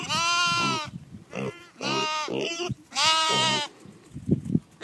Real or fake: real